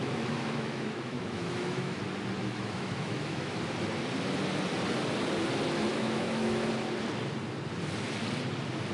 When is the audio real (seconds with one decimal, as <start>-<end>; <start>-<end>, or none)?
2.0-2.4; 3.6-5.9; 6.7-8.9